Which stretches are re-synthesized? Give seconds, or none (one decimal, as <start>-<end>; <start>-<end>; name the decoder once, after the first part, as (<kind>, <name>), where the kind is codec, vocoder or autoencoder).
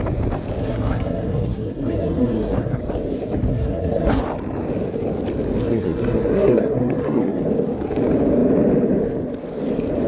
0.6-2.8 (codec, SNAC); 3.5-4.2; 5.6-7.4